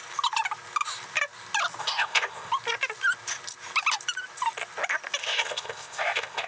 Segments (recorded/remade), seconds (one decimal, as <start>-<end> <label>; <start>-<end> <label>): 0.0-1.8 recorded; 1.8-2.5 remade; 2.5-5.2 recorded; 5.2-6.5 remade

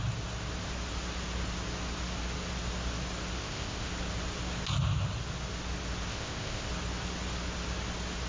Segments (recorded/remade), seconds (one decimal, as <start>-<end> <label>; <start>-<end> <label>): 0.0-3.4 recorded; 3.4-3.9 remade; 3.9-6.1 recorded; 6.1-6.7 remade; 6.7-8.3 recorded

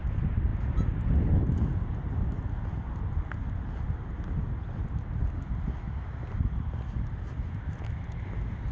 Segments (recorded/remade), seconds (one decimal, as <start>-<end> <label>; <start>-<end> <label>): 0.0-8.7 recorded

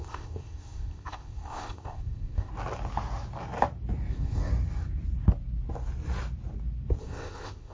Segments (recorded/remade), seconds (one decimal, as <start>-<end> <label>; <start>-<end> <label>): 0.0-2.5 remade; 2.5-4.1 recorded; 4.1-4.5 remade; 4.5-7.0 recorded; 7.0-7.7 remade

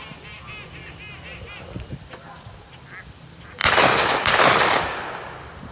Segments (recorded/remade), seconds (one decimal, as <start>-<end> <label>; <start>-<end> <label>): 0.0-5.7 recorded